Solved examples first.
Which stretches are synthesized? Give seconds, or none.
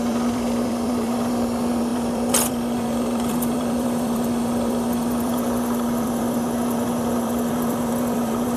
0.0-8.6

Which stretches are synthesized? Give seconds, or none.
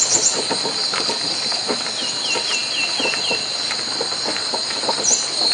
none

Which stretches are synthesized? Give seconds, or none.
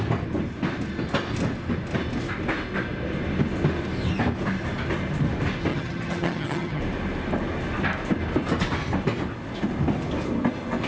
5.7-6.8